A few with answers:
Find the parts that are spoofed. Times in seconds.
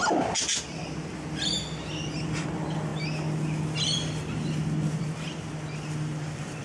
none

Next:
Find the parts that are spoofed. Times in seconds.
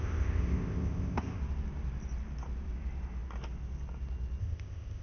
0.0-1.4 (codec, ZipCodec); 4.4-5.0